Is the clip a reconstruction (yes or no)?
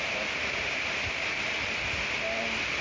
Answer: no